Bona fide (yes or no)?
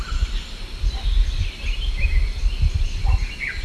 no